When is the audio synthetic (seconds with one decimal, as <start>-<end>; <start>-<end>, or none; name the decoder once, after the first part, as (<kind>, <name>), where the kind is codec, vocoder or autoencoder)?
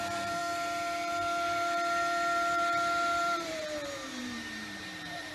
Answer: 0.0-5.3 (vocoder, BigVGAN v2)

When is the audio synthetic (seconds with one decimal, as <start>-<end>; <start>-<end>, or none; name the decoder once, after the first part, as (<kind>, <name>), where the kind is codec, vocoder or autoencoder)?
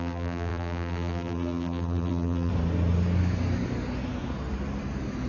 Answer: 0.0-2.5 (vocoder, BigVGAN v2)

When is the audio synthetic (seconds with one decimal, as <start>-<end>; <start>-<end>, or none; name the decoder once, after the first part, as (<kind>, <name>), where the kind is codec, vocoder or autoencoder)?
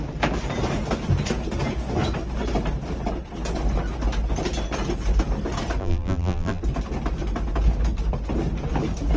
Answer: 5.8-6.6 (vocoder, BigVGAN v2)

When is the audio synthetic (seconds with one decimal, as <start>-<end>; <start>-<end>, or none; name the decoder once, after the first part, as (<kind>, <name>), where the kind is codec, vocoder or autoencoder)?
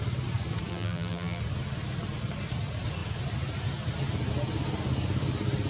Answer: 0.7-1.4 (vocoder, BigVGAN v2)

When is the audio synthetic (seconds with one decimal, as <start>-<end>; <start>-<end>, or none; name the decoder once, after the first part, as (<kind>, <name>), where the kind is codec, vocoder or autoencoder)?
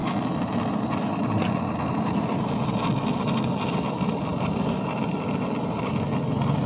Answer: none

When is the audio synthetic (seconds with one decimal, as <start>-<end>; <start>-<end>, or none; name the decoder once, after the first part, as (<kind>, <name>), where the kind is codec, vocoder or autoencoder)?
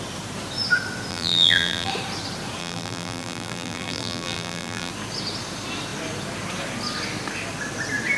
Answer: 1.1-1.9 (vocoder, BigVGAN v2); 2.6-4.9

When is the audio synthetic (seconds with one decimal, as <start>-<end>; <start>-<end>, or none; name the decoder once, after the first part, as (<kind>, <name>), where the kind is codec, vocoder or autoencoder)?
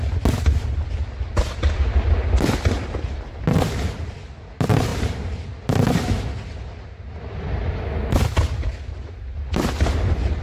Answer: 4.9-5.5 (vocoder, BigVGAN v2)